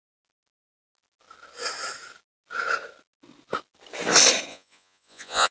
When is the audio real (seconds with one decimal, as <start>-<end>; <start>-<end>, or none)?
0.0-4.5